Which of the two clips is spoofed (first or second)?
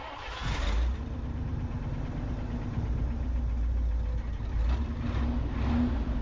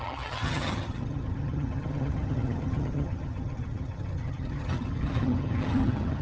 second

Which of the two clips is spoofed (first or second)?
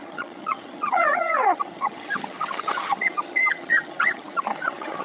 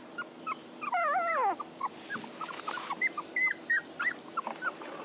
first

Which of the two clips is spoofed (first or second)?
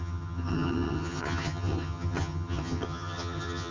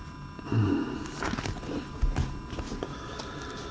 first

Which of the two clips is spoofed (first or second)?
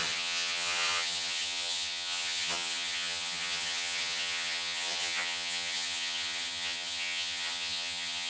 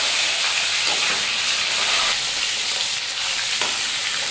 first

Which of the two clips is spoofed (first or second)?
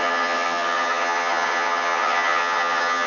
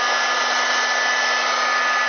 first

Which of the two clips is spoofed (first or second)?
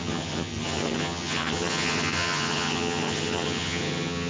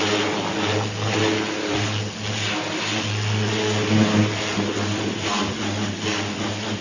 first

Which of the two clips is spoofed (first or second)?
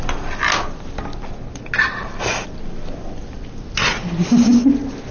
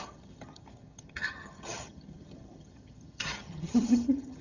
second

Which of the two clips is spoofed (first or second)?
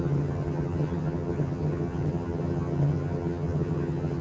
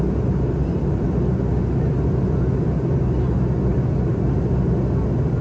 first